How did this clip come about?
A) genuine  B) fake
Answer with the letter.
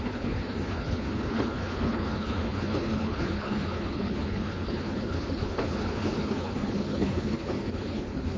B